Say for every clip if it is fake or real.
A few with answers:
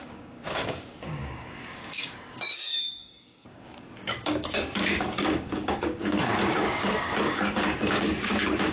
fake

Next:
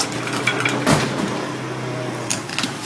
real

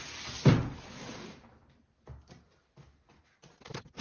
real